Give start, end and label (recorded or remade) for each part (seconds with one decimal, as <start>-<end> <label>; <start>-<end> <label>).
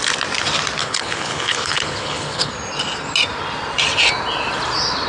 0.0-0.8 recorded; 0.8-2.5 remade; 2.5-5.1 recorded